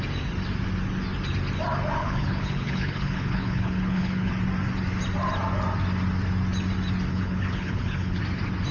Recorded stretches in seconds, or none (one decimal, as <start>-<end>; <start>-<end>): 0.0-2.0; 4.3-7.1; 8.2-8.7